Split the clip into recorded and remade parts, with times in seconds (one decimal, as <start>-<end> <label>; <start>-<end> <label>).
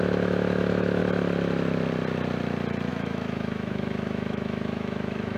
0.0-1.0 remade; 1.0-2.9 recorded; 2.9-5.4 remade